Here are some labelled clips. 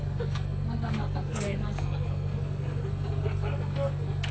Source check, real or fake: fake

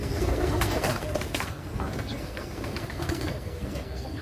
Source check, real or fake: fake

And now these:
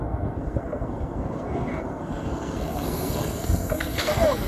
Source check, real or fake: fake